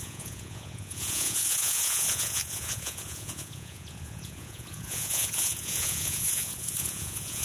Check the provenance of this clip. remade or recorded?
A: remade